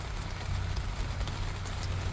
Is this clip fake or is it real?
real